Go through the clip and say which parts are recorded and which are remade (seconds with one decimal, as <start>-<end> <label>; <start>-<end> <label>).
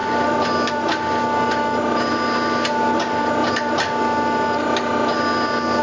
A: 0.0-5.8 recorded